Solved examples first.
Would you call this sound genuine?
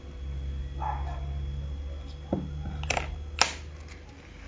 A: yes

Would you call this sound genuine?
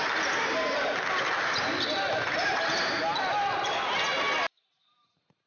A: yes